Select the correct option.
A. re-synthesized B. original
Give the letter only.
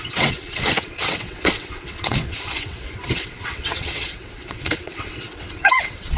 A